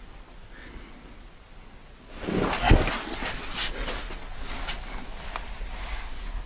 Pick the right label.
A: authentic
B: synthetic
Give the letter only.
A